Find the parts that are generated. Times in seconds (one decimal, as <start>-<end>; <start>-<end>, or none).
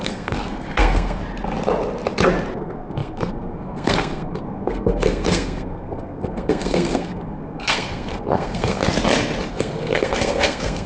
0.0-1.2; 2.6-8.8; 9.5-10.9